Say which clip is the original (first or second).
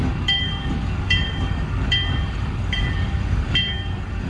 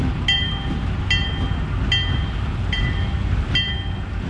second